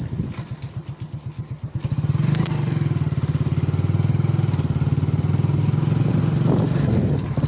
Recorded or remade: recorded